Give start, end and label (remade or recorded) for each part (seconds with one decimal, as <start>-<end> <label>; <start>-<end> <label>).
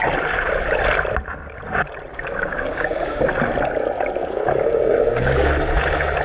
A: 0.0-2.1 recorded; 2.1-3.2 remade; 3.2-4.2 recorded; 4.2-5.5 remade; 5.5-6.2 recorded